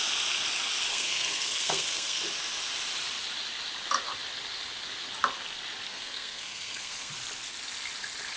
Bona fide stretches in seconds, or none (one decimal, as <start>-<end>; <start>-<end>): 0.0-0.9; 2.2-5.9; 7.1-8.4